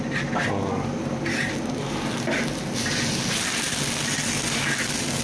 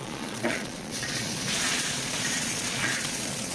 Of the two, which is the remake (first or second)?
second